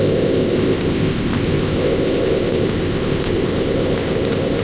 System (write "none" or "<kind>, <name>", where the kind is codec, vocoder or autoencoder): codec, ZipCodec